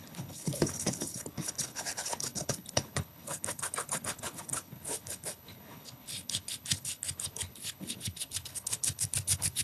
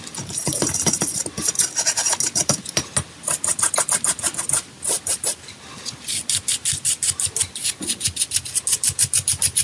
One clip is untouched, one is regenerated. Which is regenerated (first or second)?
first